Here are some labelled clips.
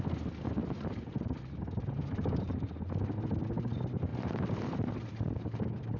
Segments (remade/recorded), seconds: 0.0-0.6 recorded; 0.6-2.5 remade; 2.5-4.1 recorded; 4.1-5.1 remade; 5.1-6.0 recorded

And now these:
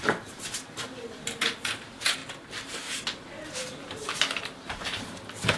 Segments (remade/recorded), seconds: 0.0-5.6 remade